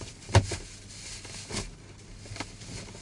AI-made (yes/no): no